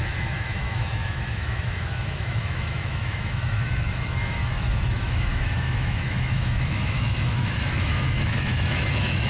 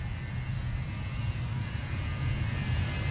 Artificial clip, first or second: first